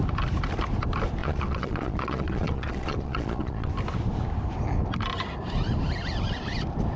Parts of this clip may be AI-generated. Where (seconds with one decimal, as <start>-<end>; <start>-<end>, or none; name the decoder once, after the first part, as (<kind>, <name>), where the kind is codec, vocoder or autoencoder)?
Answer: 1.2-3.7 (vocoder, Vocos)